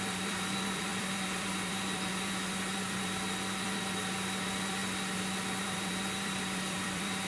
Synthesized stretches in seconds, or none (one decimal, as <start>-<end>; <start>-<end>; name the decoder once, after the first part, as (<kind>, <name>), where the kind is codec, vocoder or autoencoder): 0.0-4.8 (vocoder, BigVGAN v2); 5.6-7.3